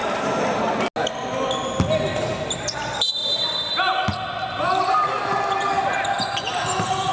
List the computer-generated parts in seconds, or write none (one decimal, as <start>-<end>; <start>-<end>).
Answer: none